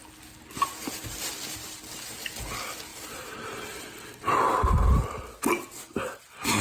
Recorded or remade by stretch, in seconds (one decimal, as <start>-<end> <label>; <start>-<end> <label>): 0.0-6.6 recorded